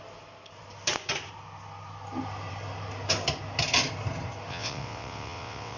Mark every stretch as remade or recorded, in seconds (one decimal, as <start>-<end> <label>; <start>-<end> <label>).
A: 0.0-4.5 recorded; 4.5-5.8 remade